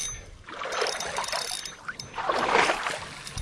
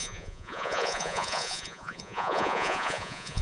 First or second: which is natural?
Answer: first